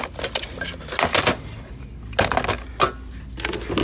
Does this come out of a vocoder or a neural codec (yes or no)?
no